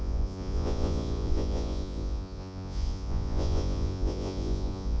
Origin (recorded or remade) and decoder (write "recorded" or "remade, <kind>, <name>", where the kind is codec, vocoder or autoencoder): remade, vocoder, Vocos